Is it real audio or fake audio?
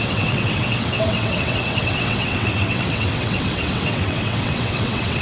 fake